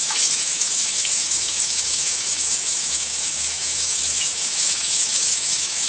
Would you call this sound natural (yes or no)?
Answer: no